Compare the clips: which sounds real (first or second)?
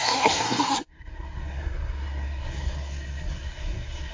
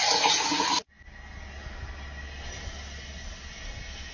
second